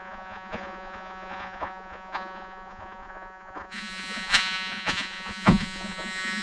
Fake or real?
fake